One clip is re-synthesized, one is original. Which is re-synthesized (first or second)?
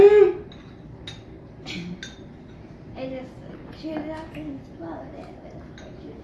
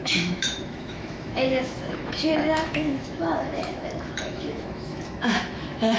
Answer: second